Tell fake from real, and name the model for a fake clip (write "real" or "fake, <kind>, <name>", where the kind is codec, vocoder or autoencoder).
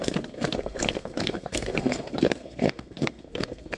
fake, codec, SNAC